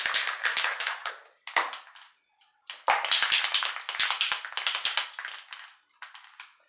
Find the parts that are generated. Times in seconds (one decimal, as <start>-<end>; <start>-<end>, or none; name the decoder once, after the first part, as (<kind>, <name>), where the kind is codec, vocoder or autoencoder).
0.5-1.1 (autoencoder, DAC-VAE)